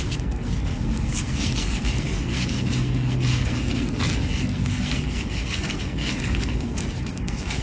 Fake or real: fake